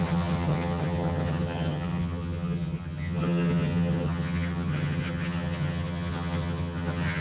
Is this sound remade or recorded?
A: remade